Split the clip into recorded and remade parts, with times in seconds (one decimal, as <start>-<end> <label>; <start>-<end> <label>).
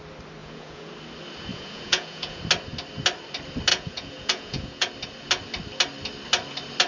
0.0-0.4 recorded; 0.4-0.9 remade; 0.9-1.5 recorded; 1.5-2.4 remade; 2.4-3.7 recorded; 3.7-4.9 remade; 4.9-6.9 recorded